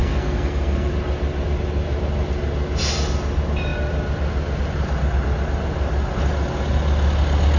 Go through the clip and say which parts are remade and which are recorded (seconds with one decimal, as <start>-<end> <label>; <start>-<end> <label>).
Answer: 0.0-0.9 remade; 0.9-7.6 recorded